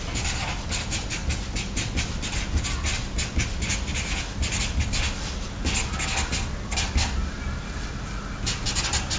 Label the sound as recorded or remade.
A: recorded